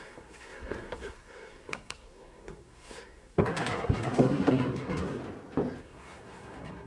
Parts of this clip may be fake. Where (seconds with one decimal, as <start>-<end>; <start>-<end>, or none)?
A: 0.0-5.2; 5.8-6.9